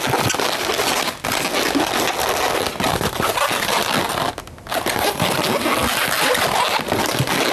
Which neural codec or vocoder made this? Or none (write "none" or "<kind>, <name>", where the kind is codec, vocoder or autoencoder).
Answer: none